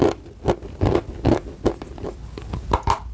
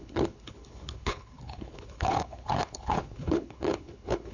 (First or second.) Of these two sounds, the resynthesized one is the second